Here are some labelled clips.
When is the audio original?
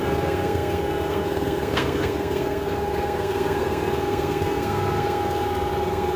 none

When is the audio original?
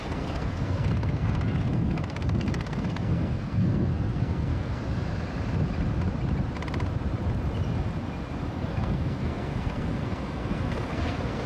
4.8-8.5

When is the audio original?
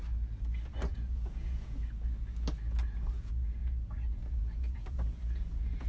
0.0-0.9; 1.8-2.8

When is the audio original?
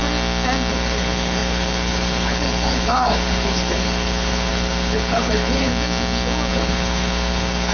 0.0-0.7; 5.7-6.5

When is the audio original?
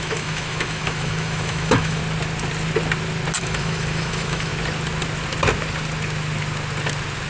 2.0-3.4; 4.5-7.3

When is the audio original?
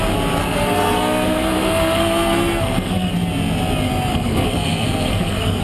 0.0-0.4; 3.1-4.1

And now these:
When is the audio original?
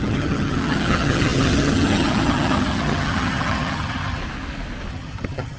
4.2-4.9